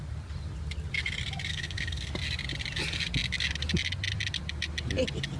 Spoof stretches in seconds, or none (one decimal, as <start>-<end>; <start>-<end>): 1.5-2.1